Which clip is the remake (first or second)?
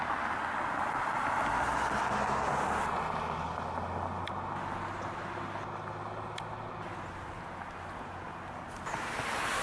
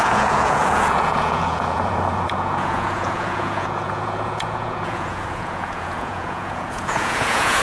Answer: second